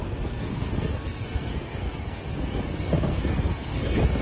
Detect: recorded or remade remade